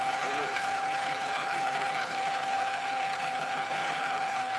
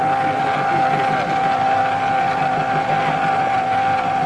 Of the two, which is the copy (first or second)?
first